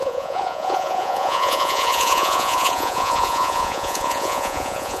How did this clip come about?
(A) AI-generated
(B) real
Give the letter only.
A